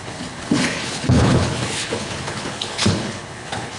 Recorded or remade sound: remade